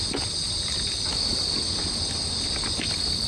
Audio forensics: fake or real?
real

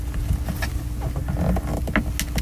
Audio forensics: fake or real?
real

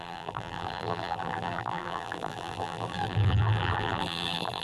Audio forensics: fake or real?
fake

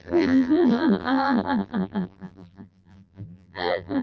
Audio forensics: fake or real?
fake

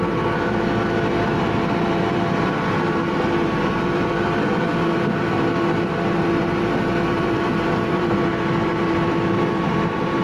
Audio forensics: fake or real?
fake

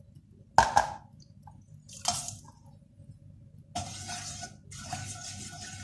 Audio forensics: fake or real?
real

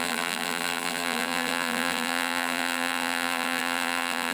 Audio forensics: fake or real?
fake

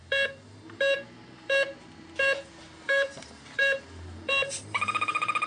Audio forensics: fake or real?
fake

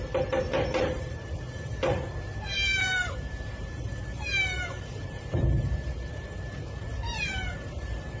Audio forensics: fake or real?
fake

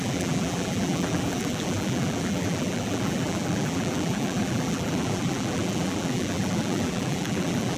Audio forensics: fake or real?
fake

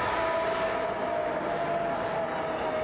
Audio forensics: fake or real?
real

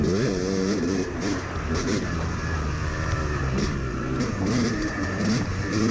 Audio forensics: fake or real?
fake